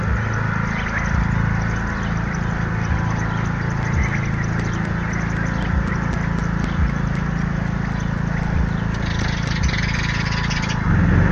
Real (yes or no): yes